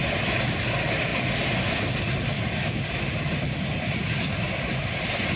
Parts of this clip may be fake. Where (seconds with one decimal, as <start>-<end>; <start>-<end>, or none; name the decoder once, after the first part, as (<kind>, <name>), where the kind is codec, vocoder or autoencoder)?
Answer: none